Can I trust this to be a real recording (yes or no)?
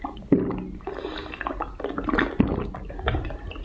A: yes